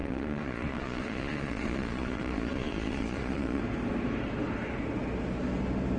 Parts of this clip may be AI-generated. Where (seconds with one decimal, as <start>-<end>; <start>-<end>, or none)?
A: 0.0-3.6